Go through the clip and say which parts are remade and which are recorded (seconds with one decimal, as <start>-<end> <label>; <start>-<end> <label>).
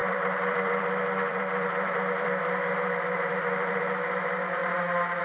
0.0-0.9 remade; 0.9-1.3 recorded; 1.3-3.8 remade; 3.8-5.2 recorded